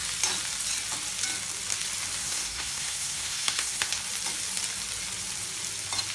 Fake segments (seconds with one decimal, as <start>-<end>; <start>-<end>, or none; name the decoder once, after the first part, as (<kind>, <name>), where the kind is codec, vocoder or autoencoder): 2.2-3.9 (codec, SNAC)